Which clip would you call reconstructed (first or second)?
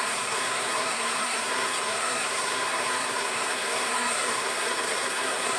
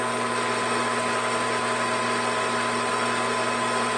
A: first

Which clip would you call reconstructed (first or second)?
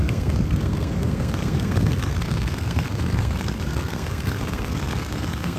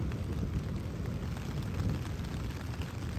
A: first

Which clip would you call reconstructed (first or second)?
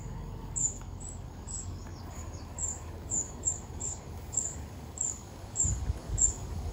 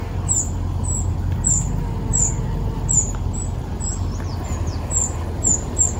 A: first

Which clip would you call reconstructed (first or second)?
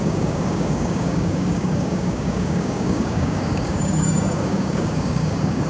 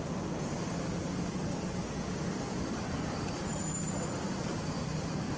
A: first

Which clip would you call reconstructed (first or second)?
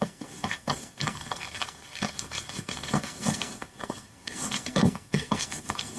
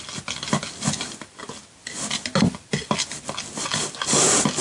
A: first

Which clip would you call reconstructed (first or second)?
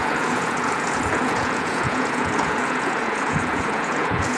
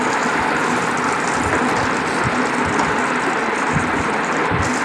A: first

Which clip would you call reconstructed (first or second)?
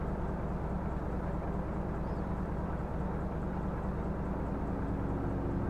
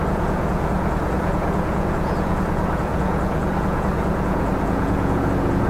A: second